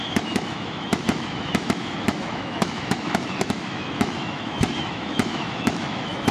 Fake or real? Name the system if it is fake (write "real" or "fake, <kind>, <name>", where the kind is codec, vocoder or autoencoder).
fake, autoencoder, DAC-VAE